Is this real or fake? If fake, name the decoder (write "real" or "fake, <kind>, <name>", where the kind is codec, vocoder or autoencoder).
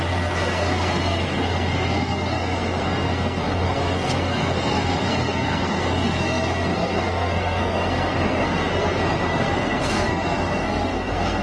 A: fake, codec, SNAC